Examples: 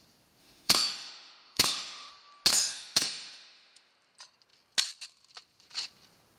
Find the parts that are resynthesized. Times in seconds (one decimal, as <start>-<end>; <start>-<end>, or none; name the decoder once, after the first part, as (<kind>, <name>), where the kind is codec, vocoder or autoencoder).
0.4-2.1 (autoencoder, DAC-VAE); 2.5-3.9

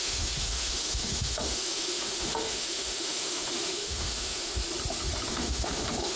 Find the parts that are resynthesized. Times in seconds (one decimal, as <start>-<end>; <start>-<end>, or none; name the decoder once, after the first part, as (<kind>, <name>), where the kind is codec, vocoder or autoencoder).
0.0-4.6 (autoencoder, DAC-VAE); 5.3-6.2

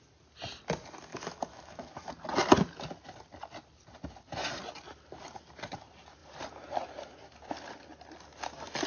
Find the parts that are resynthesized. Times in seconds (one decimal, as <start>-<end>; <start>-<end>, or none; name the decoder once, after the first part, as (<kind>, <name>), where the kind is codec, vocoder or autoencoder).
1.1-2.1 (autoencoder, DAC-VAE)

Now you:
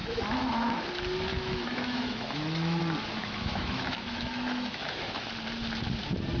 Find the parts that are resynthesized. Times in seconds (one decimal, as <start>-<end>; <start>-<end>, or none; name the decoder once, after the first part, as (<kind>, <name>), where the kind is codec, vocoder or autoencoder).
0.0-0.8 (autoencoder, DAC-VAE); 1.3-2.8; 3.2-5.3

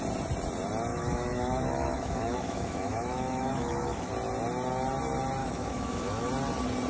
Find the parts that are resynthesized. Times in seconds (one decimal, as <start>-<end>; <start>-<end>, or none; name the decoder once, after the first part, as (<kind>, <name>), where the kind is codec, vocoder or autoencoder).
0.9-4.1 (autoencoder, DAC-VAE); 5.4-6.3